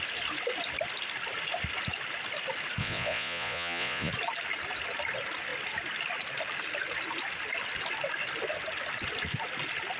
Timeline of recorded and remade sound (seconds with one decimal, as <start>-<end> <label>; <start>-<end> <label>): 0.0-2.8 recorded; 2.8-4.1 remade; 4.1-10.0 recorded